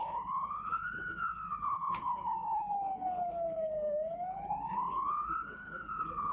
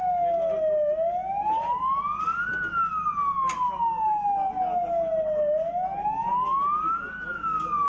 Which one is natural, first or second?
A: second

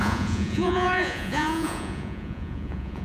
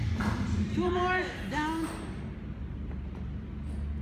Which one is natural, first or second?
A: second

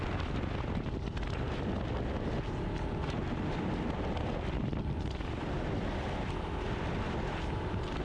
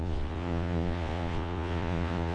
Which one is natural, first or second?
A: first